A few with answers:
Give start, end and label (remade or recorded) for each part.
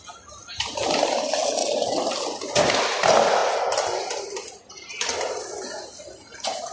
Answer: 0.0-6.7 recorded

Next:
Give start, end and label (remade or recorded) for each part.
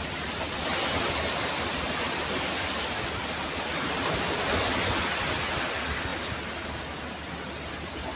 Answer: 0.0-8.2 recorded